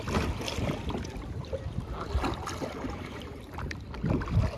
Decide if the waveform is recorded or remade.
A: recorded